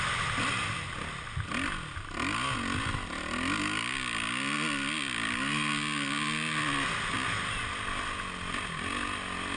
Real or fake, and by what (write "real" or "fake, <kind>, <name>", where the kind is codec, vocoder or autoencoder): real